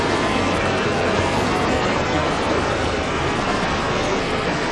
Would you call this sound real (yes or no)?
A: no